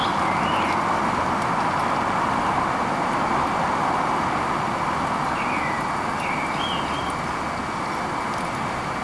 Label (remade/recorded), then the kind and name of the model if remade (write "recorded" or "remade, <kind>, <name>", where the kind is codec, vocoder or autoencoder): recorded